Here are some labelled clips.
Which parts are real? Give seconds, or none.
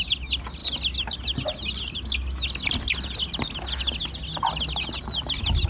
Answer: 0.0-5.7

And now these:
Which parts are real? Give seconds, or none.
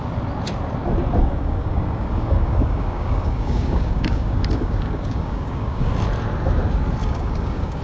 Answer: 0.0-1.2; 5.9-7.0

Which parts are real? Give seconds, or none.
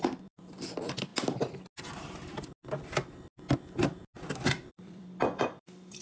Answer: 1.1-4.7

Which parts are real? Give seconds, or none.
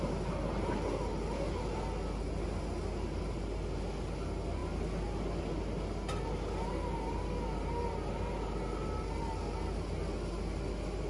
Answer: 0.0-11.1